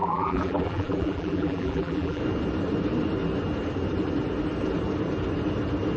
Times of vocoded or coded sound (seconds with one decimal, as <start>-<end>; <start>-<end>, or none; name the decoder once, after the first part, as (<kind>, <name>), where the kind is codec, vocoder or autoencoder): 0.0-2.2 (vocoder, BigVGAN v2)